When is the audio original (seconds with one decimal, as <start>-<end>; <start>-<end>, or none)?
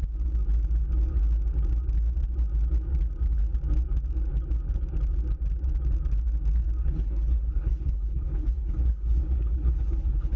0.0-6.8